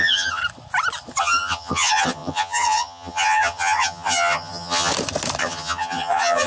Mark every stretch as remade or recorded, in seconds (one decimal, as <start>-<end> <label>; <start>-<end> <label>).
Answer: 0.0-0.4 remade; 0.4-1.2 recorded; 1.2-4.9 remade; 4.9-5.4 recorded; 5.4-6.5 remade